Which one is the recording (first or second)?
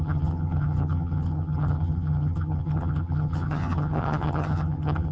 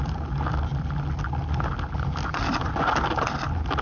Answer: second